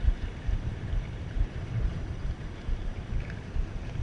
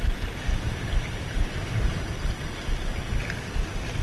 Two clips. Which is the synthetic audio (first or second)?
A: first